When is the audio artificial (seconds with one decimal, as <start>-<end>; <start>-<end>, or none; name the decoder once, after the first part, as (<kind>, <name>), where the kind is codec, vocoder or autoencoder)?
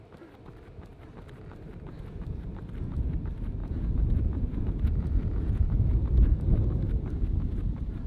3.6-6.4 (vocoder, Vocos)